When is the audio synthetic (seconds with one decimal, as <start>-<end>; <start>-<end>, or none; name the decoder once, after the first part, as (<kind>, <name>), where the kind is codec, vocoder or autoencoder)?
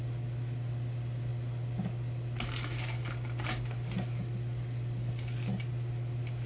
none